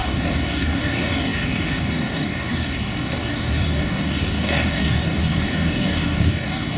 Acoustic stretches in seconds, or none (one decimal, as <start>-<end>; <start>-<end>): none